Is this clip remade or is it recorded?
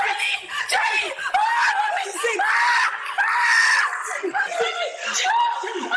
recorded